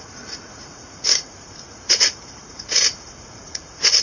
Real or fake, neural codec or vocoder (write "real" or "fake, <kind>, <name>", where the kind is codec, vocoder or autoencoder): fake, vocoder, Vocos